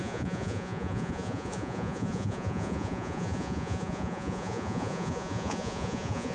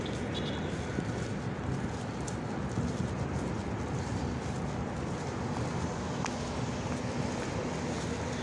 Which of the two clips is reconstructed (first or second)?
first